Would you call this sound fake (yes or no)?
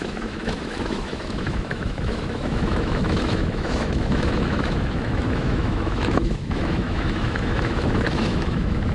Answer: yes